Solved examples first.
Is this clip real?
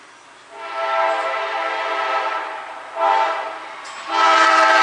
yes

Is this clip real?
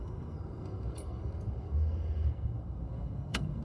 no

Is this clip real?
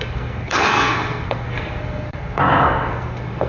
no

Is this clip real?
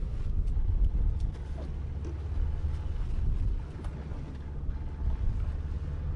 yes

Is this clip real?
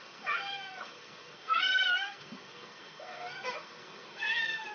no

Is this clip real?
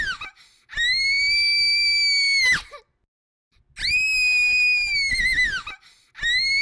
yes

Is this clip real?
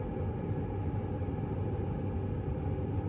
yes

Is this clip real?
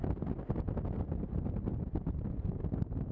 yes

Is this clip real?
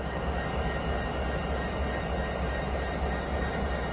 yes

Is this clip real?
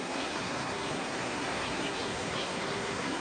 no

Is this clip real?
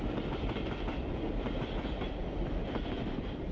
yes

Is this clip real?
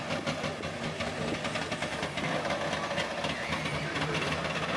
yes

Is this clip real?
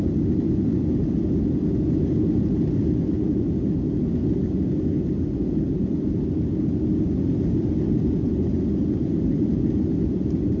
yes